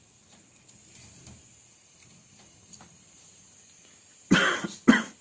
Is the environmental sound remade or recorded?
recorded